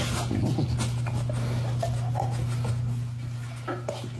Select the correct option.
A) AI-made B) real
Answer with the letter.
B